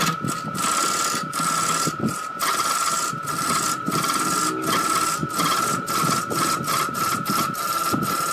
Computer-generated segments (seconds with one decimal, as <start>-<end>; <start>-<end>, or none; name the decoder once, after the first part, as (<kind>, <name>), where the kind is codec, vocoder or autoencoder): none